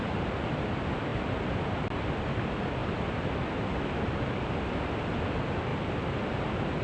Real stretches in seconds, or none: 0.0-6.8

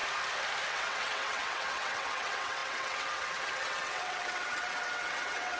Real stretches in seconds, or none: 0.0-0.7

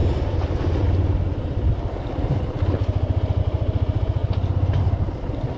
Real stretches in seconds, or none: 3.4-5.6

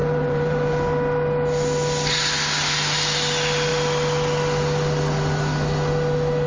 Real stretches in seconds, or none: 0.9-6.5